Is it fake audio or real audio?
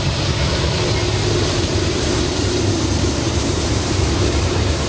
fake